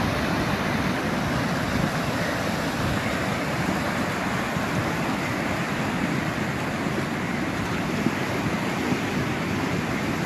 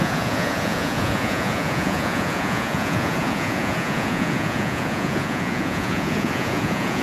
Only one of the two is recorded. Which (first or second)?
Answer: first